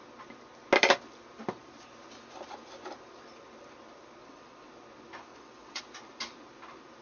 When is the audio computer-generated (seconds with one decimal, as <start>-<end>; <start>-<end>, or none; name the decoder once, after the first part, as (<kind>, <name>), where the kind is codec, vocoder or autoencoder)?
4.2-4.7 (vocoder, WaveNeXt); 5.3-5.8